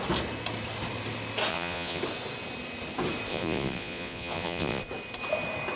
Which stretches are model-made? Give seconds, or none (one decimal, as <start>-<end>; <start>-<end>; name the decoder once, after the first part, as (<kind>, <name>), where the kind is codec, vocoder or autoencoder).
1.5-2.0 (vocoder, Vocos); 3.3-4.8